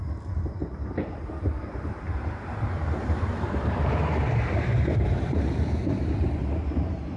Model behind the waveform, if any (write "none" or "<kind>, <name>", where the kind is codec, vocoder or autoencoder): vocoder, BigVGAN v2